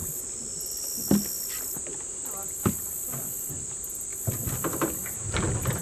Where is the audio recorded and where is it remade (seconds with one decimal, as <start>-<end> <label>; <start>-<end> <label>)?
0.0-3.5 recorded; 3.5-5.8 remade